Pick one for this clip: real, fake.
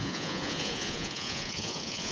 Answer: fake